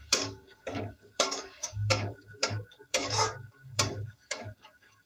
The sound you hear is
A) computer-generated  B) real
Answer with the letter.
A